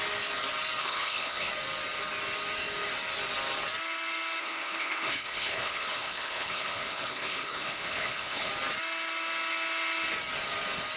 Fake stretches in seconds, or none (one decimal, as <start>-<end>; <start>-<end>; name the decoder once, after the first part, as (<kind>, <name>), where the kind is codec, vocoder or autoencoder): 0.8-1.5 (codec, HILCodec); 4.4-8.5